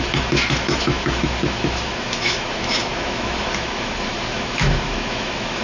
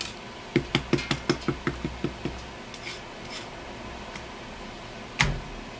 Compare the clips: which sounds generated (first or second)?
first